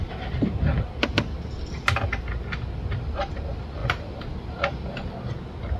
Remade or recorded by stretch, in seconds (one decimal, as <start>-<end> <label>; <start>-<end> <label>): 0.0-5.8 recorded